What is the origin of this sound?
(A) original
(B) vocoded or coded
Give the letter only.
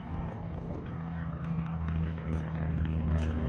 B